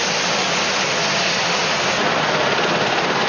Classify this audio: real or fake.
real